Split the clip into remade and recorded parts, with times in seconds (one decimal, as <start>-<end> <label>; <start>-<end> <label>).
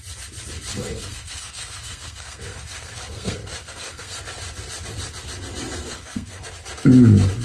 0.0-0.7 recorded; 0.7-4.2 remade; 4.2-5.8 recorded; 5.8-6.5 remade; 6.5-7.4 recorded